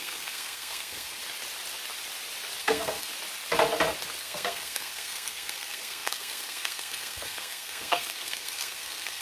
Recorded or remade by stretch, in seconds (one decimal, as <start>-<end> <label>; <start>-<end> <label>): 0.0-1.2 remade; 1.2-2.6 recorded; 2.6-3.1 remade; 3.1-4.2 recorded; 4.2-9.2 remade